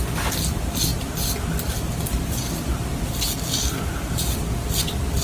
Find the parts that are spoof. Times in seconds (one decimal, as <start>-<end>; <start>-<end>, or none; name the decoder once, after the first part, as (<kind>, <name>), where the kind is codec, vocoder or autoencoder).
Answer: none